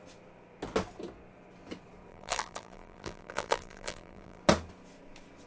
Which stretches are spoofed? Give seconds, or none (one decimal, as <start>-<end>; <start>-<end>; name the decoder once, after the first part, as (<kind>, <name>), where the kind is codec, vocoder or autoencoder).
2.1-4.4 (vocoder, BigVGAN v2)